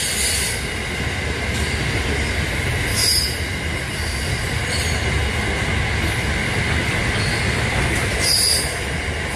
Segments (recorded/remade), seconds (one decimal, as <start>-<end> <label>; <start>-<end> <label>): 0.0-9.4 recorded